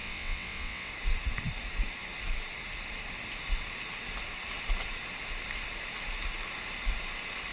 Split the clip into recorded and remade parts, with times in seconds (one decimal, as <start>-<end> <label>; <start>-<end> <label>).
0.0-0.9 remade; 0.9-7.5 recorded